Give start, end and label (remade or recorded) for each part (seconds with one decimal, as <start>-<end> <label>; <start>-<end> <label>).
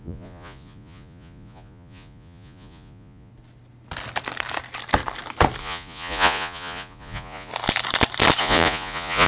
0.0-3.3 remade; 3.3-5.6 recorded; 5.6-7.5 remade; 7.5-8.4 recorded; 8.4-9.3 remade